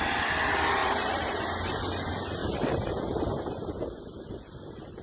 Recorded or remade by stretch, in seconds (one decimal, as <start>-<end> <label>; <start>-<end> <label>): 0.0-0.8 recorded; 0.8-1.4 remade; 1.4-2.4 recorded; 2.4-3.7 remade; 3.7-5.0 recorded